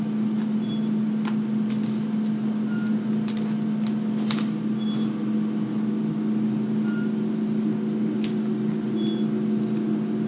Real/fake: real